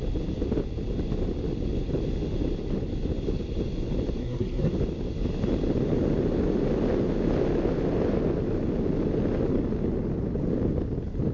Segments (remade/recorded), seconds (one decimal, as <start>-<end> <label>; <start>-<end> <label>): 0.0-4.2 recorded; 4.2-4.7 remade; 4.7-11.3 recorded